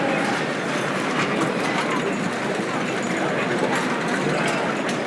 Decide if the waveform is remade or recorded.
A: recorded